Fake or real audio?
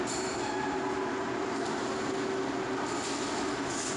real